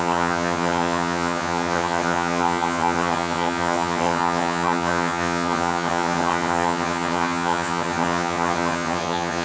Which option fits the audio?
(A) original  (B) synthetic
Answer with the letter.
B